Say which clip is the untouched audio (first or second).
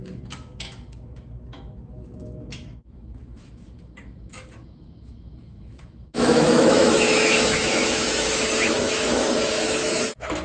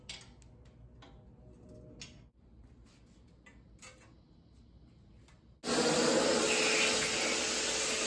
second